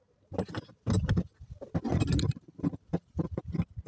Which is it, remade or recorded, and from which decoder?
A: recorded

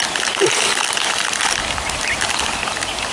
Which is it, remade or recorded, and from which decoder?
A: recorded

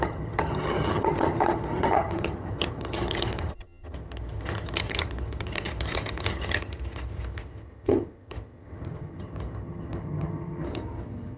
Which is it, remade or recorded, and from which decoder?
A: remade, vocoder, HiFi-GAN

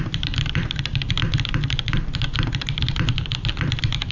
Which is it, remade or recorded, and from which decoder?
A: remade, vocoder, BigVGAN v2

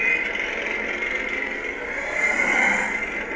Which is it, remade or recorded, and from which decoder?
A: recorded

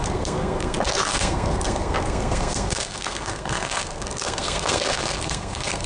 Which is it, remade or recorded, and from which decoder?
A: remade, codec, SNAC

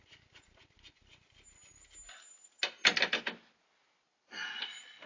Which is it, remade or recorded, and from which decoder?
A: recorded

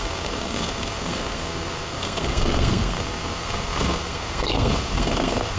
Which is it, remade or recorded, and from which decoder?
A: remade, codec, SNAC